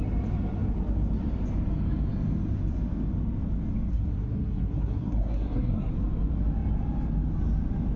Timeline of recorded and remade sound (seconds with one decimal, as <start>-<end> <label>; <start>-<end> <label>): 0.0-3.9 recorded; 3.9-5.9 remade; 5.9-8.0 recorded